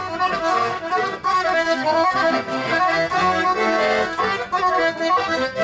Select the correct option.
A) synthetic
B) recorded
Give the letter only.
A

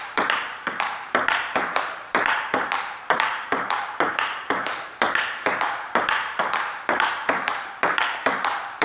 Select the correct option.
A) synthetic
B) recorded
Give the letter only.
A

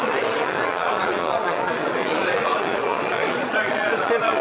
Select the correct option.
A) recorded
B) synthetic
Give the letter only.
B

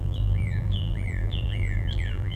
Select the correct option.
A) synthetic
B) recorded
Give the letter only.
A